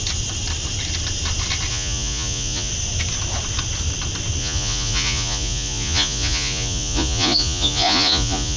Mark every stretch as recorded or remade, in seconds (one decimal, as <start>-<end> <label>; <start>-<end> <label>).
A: 0.0-1.7 recorded; 1.7-2.7 remade; 2.7-4.4 recorded; 4.4-8.6 remade